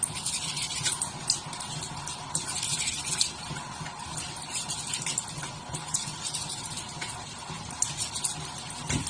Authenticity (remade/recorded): recorded